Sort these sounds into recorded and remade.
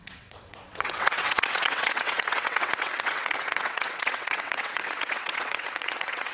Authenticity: remade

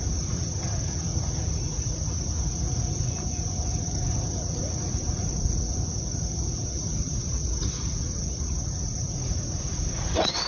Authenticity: remade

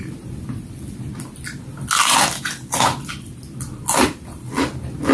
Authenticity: recorded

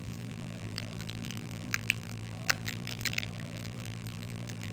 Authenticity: remade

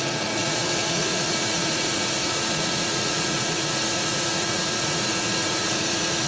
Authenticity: remade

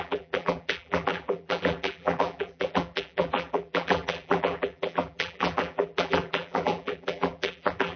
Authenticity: remade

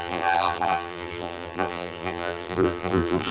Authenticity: remade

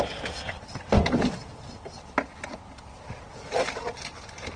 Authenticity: recorded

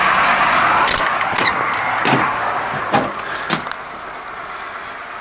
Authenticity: recorded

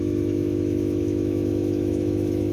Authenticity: remade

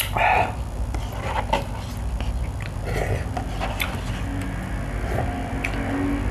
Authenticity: recorded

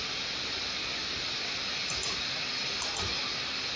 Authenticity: recorded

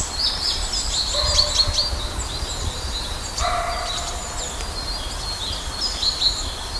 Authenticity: recorded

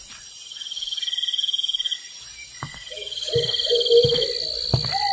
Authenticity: recorded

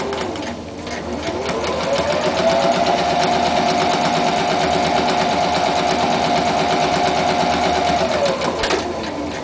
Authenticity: recorded